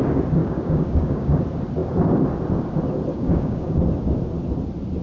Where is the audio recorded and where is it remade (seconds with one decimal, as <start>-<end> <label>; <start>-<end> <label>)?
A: 0.0-0.4 recorded; 0.4-1.4 remade; 1.4-3.1 recorded; 3.1-3.8 remade; 3.8-5.0 recorded